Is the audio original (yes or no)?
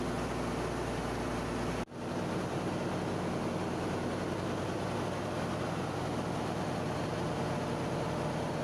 yes